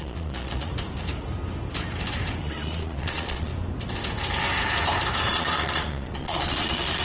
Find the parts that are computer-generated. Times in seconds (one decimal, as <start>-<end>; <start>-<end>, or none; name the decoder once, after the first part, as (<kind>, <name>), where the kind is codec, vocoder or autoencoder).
0.0-0.7 (vocoder, Vocos); 2.4-3.5; 5.3-7.0